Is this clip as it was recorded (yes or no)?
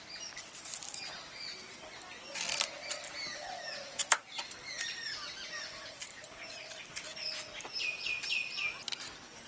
yes